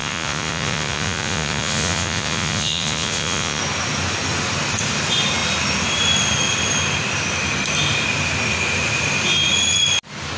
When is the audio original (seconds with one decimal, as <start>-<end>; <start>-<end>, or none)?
3.6-10.4